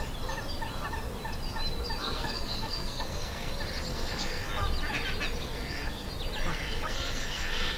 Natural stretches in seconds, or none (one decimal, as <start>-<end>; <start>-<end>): 0.0-2.0; 3.5-3.9; 4.5-5.4; 6.1-6.5

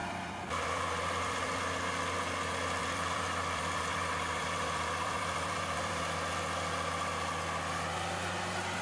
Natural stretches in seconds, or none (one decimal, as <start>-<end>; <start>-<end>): 1.6-2.8; 6.0-8.8

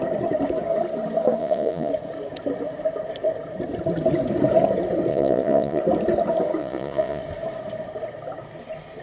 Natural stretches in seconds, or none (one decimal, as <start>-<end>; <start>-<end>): 0.0-1.4; 1.9-5.1; 5.8-6.6; 7.2-9.0

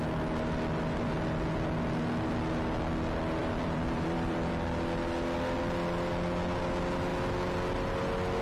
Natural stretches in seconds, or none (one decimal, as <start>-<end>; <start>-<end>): 0.0-3.4; 4.5-8.4

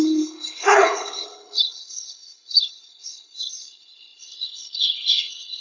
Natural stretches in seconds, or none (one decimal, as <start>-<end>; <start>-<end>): none

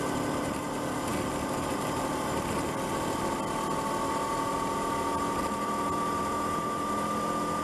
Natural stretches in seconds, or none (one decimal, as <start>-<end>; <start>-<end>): 0.0-7.6

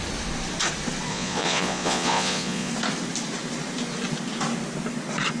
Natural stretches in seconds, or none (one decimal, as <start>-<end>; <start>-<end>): 0.0-1.1; 2.7-5.4

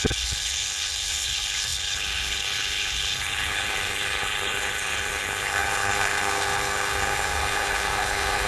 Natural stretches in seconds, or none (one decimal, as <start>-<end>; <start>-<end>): none